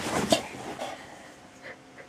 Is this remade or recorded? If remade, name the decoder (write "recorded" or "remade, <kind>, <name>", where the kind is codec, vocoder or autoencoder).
recorded